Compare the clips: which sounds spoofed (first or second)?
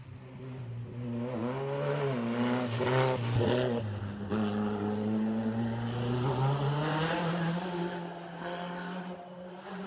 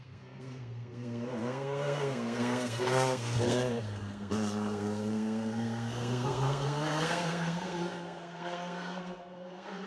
second